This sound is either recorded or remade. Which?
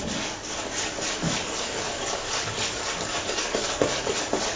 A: remade